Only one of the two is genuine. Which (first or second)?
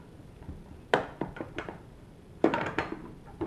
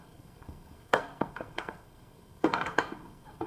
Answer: first